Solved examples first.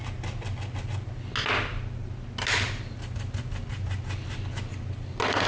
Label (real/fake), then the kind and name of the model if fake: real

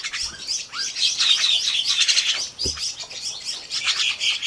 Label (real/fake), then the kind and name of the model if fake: real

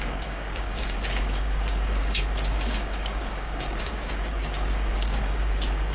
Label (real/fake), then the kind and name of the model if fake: fake, codec, DAC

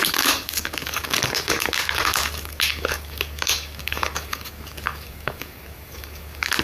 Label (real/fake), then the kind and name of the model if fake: fake, codec, DAC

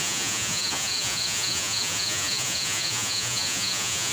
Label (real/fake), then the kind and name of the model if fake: fake, vocoder, Vocos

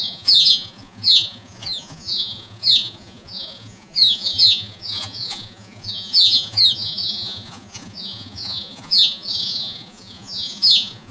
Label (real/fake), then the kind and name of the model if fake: fake, vocoder, Vocos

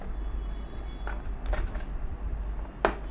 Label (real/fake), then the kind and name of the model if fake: real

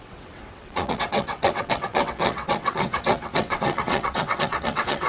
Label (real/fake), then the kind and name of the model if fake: fake, vocoder, WaveNeXt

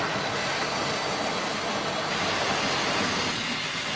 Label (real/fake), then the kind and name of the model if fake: real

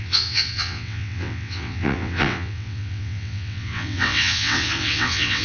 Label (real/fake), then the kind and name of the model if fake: fake, vocoder, WaveNeXt